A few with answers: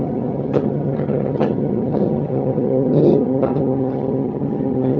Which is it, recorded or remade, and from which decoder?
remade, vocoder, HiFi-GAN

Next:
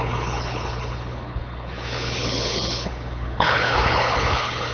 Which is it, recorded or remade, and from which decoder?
remade, codec, HILCodec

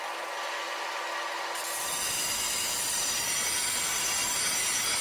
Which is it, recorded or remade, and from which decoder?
recorded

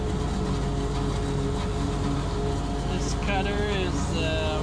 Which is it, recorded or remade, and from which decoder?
recorded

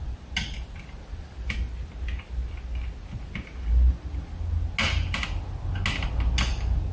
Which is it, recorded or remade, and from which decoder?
recorded